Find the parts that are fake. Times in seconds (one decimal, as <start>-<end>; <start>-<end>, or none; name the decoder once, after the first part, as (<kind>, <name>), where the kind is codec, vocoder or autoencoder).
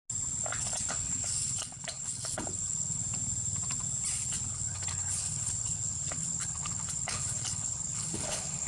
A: 0.9-3.0 (codec, HILCodec); 4.5-8.7